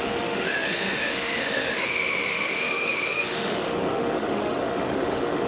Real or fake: fake